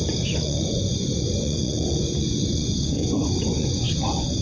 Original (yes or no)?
no